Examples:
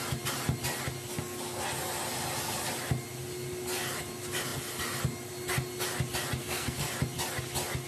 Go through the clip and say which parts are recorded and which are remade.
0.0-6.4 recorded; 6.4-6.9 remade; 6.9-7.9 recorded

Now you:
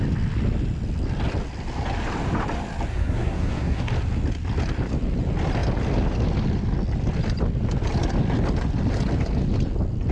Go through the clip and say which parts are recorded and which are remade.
0.0-2.9 recorded; 2.9-3.9 remade; 3.9-10.1 recorded